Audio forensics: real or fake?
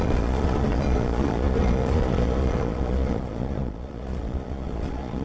fake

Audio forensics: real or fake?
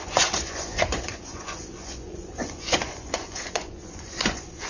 fake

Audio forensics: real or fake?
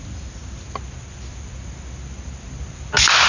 real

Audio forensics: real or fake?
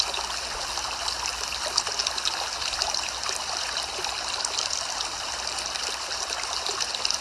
real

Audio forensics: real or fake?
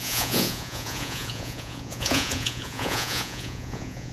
fake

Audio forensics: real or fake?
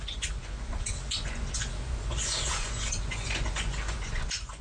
fake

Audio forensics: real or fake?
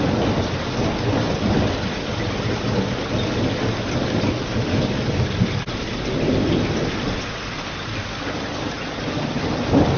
real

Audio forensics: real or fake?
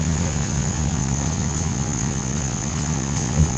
fake